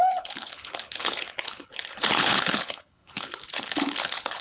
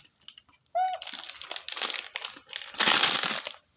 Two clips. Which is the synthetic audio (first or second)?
first